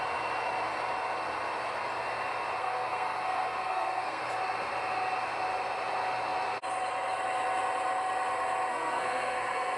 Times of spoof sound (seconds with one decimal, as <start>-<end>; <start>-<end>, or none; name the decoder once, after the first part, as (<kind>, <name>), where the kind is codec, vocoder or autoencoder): 2.6-4.2 (codec, SNAC); 8.7-9.8